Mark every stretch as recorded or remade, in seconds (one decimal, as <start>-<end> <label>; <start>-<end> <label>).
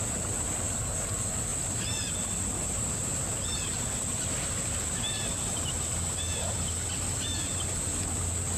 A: 0.0-8.6 recorded